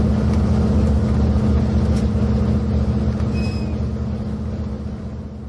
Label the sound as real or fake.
real